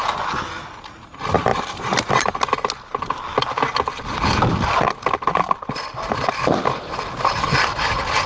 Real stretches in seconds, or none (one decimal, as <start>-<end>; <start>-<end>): 0.0-8.3